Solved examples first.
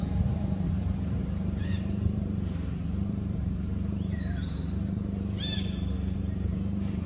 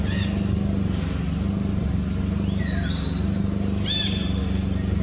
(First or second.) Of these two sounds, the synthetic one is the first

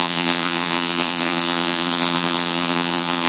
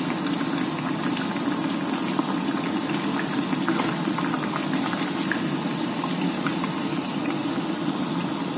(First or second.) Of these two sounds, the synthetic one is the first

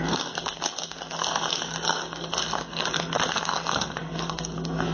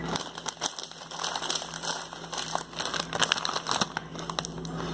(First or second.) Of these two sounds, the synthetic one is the first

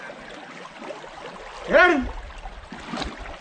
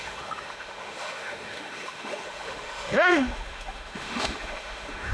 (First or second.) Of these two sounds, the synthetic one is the second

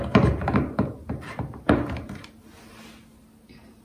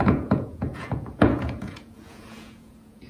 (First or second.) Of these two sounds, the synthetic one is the second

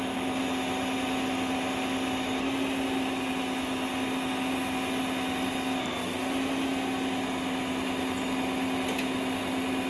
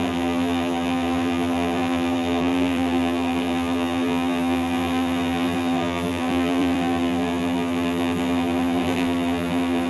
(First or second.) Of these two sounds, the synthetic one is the second